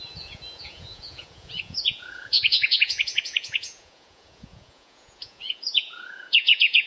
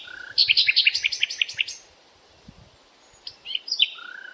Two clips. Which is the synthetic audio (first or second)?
first